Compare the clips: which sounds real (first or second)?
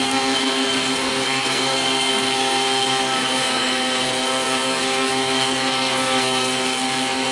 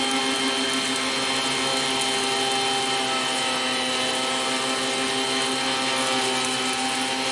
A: second